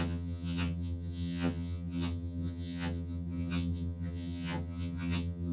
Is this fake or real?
fake